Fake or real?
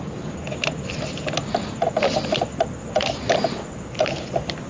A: real